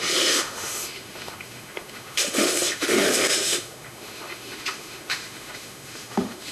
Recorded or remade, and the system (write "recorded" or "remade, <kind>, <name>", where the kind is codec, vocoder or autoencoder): remade, autoencoder, DAC-VAE